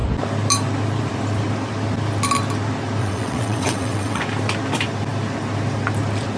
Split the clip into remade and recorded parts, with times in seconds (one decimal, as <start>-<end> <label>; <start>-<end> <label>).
0.0-3.0 recorded; 3.0-4.2 remade; 4.2-6.4 recorded